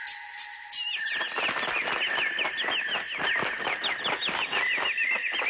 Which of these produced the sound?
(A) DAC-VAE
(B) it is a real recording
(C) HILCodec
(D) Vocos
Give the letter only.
B